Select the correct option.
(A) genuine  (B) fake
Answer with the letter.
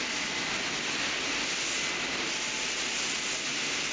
A